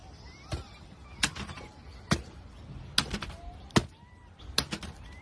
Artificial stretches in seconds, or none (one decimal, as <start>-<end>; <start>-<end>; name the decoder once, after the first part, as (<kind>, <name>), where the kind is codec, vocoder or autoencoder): 0.0-1.6 (vocoder, BigVGAN v2); 3.8-4.4